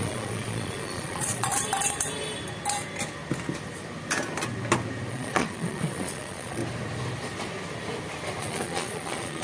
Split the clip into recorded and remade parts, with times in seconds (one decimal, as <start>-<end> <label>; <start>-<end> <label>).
0.0-1.5 remade; 1.5-5.1 recorded; 5.1-6.6 remade; 6.6-8.4 recorded; 8.4-9.4 remade

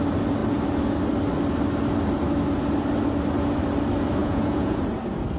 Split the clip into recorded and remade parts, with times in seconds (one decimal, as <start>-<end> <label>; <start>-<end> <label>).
0.0-4.2 recorded; 4.2-4.8 remade; 4.8-5.4 recorded

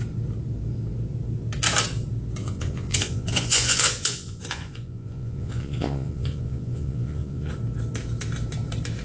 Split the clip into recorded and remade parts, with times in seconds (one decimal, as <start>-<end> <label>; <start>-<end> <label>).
0.0-2.4 recorded; 2.4-7.5 remade; 7.5-9.0 recorded

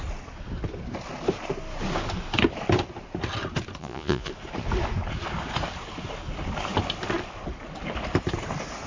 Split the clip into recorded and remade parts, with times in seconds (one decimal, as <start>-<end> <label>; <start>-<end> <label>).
0.0-3.8 recorded; 3.8-4.3 remade; 4.3-8.9 recorded

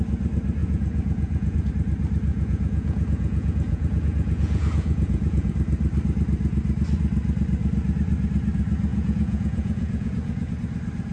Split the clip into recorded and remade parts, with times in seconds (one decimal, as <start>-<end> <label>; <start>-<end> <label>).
0.0-0.6 recorded; 0.6-1.7 remade; 1.7-2.3 recorded; 2.3-5.5 remade; 5.5-8.9 recorded; 8.9-10.5 remade; 10.5-11.1 recorded